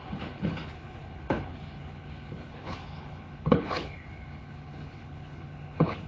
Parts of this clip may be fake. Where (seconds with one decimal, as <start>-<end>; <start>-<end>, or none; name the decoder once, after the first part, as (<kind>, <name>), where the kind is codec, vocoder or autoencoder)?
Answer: 0.0-6.1 (codec, HILCodec)